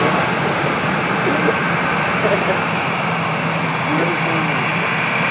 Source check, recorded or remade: recorded